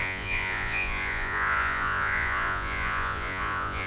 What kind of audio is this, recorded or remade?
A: remade